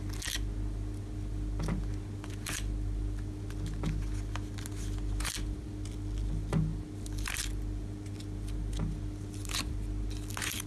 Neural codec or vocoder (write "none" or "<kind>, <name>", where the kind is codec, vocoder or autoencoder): none